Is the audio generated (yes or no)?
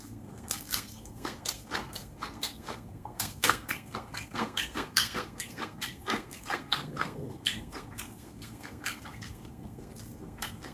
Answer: yes